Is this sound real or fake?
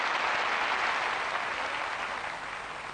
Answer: real